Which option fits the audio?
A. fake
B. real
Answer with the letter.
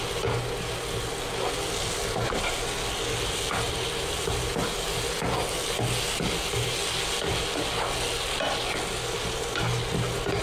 B